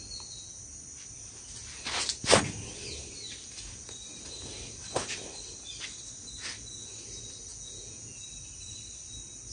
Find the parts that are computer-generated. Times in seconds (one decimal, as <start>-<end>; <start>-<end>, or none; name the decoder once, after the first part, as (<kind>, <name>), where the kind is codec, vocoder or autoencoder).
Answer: 7.5-8.2 (vocoder, Vocos)

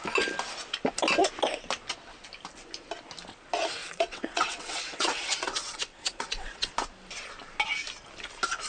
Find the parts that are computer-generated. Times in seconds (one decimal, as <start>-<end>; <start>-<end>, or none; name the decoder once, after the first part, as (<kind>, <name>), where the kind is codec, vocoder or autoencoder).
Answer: 3.8-6.7 (vocoder, WaveNeXt)

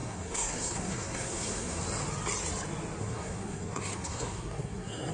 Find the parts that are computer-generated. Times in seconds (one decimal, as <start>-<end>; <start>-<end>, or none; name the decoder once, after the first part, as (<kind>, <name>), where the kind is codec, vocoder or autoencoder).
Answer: 0.0-1.8 (codec, SNAC); 3.0-5.1

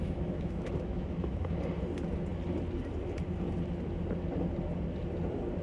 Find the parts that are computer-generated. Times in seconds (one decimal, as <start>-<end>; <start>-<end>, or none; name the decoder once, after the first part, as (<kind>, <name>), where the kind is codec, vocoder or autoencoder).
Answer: 0.0-1.6 (autoencoder, DAC-VAE)

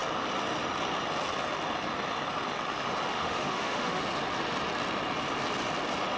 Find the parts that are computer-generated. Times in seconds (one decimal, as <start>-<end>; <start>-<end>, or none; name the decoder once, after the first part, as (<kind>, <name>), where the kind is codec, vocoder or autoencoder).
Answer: 3.1-4.0 (autoencoder, DAC-VAE)

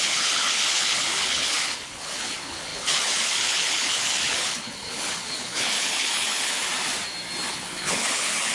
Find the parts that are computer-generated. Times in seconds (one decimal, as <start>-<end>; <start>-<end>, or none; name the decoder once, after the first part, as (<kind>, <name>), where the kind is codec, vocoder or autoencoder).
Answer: 0.0-6.7 (codec, HILCodec); 7.5-8.5